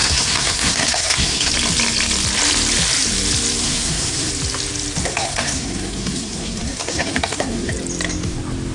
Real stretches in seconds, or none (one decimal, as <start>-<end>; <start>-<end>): 1.5-3.6; 4.3-5.0; 7.7-8.7